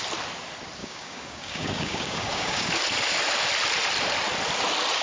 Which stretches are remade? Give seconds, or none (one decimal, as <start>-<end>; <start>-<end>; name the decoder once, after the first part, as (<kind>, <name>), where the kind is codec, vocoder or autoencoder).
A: 0.8-2.7 (codec, DAC)